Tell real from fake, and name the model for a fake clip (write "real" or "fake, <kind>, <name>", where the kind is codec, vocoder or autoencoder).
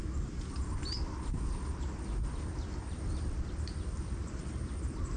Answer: real